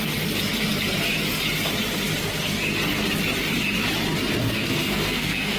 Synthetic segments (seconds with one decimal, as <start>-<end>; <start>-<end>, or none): 4.4-5.6